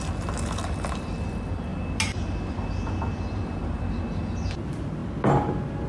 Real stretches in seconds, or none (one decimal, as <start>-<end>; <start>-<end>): 0.0-5.9